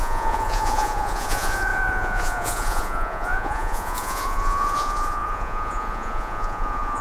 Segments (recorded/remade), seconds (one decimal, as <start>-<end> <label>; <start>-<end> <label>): 0.0-7.0 remade